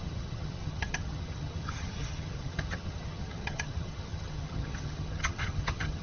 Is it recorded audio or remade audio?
remade